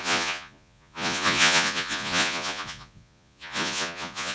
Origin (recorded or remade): remade